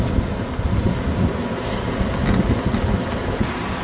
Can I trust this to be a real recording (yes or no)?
yes